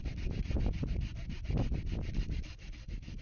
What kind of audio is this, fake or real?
real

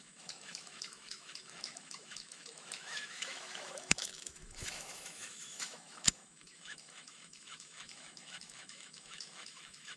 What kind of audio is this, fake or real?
fake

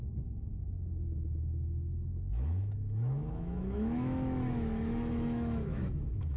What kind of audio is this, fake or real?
fake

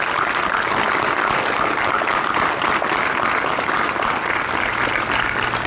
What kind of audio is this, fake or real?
real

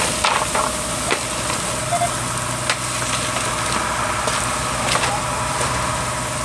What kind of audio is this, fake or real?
real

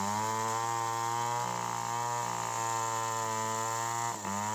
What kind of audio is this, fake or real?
real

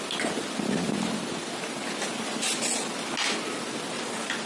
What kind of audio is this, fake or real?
real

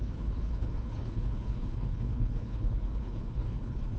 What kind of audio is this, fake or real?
fake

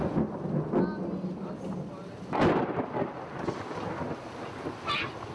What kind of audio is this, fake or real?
real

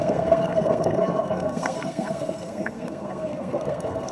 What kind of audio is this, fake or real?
fake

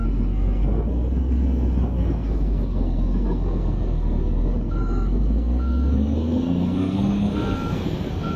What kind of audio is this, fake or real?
fake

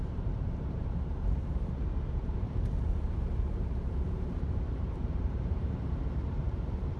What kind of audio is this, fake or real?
fake